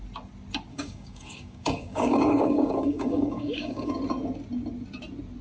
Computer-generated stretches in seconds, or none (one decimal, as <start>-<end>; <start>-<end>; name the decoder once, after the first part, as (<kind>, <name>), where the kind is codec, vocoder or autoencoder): 0.7-3.9 (codec, DAC)